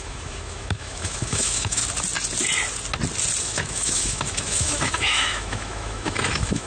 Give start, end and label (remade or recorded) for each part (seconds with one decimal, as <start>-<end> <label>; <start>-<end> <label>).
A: 0.0-1.8 remade; 1.8-3.4 recorded; 3.4-6.7 remade